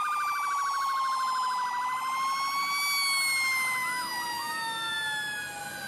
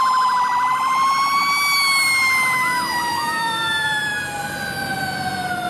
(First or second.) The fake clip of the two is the second